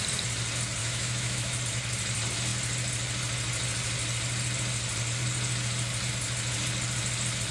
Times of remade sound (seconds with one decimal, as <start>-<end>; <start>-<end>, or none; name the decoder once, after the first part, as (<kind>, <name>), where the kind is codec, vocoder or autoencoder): 0.8-1.6 (autoencoder, DAC-VAE)